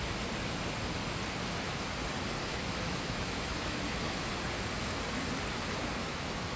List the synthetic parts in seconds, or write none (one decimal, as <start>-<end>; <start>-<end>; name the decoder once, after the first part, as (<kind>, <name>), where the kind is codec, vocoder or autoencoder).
2.5-4.3 (autoencoder, DAC-VAE); 6.0-6.6